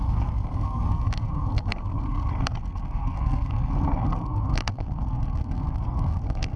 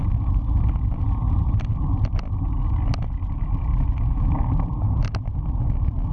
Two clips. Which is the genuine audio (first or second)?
second